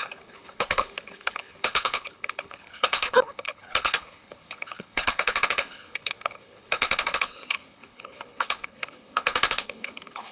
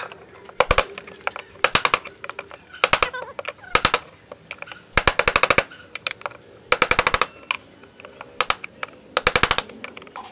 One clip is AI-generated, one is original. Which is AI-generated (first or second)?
first